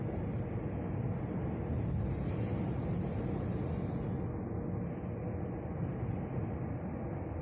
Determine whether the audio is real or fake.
real